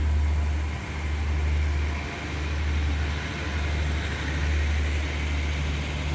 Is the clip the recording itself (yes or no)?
yes